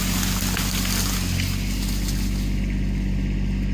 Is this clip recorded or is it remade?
recorded